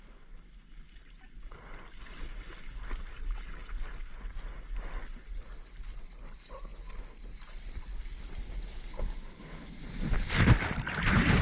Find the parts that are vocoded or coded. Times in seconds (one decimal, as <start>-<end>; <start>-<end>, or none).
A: none